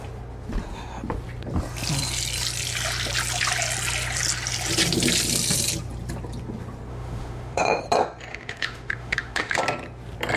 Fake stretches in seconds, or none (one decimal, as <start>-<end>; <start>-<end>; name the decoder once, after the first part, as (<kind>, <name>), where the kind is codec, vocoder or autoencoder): 6.9-7.8 (autoencoder, DAC-VAE); 8.3-9.6

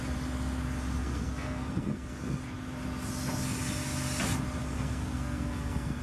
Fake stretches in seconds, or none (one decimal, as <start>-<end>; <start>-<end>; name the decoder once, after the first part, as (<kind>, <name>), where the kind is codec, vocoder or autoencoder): 1.0-2.4 (codec, SNAC); 4.6-6.0

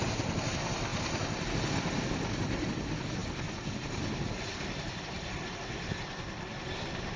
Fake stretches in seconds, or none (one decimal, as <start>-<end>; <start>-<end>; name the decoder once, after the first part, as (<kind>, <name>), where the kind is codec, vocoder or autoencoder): none

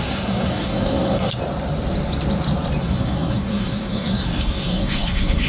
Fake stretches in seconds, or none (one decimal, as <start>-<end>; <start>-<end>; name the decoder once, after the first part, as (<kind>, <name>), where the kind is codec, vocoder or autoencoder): 0.0-1.4 (codec, SNAC); 2.8-5.5

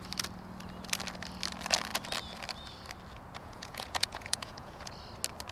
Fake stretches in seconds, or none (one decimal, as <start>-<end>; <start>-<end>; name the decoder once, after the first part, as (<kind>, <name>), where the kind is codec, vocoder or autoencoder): 3.4-4.9 (vocoder, Vocos)